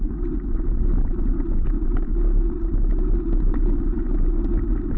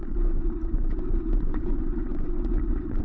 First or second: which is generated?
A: second